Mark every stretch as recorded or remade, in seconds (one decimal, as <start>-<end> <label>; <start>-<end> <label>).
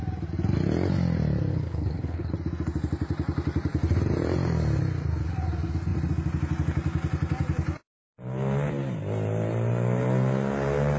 0.0-1.5 recorded; 1.5-2.3 remade; 2.3-11.0 recorded